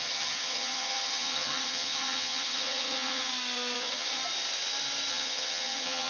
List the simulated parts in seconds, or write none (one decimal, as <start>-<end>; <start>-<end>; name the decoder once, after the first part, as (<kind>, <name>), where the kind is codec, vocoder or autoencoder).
0.0-3.3 (vocoder, HiFi-GAN); 3.8-4.2; 5.1-6.1